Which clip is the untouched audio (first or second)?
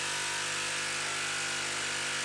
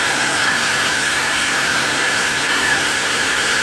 first